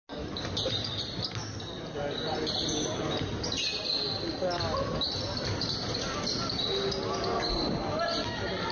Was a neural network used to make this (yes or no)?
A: no